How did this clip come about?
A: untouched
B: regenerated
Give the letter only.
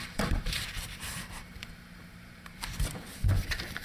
B